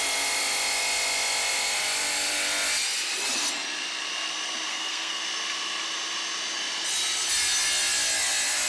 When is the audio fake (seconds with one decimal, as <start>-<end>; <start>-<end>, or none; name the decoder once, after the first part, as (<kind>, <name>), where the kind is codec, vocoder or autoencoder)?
4.7-5.2 (codec, SNAC)